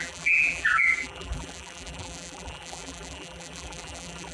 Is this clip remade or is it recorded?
remade